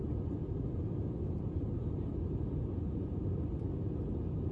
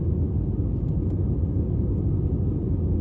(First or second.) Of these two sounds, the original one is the second